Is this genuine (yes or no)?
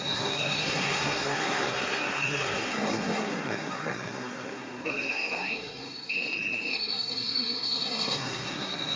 no